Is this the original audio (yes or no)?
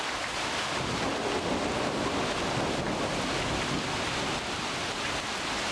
yes